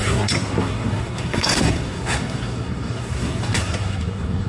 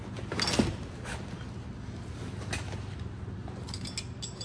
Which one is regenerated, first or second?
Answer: first